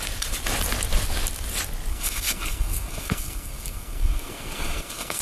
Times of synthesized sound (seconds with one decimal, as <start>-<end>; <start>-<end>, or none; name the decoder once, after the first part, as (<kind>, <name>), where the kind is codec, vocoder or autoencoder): 1.9-5.2 (codec, SNAC)